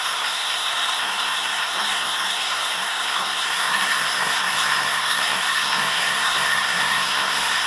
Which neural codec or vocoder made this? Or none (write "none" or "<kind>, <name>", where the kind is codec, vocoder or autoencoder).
codec, SNAC